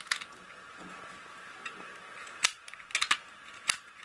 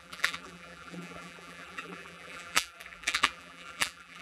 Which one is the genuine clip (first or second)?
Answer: first